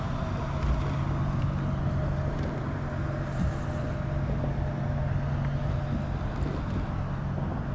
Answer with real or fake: real